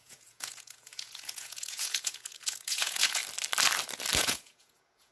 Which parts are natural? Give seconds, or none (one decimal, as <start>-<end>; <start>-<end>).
3.2-4.2